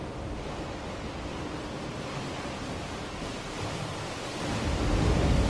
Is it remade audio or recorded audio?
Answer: recorded